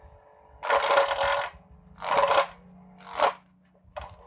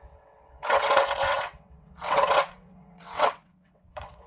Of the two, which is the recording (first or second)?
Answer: first